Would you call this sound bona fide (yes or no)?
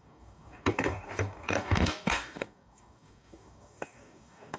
no